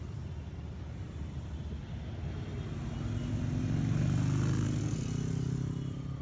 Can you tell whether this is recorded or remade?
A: recorded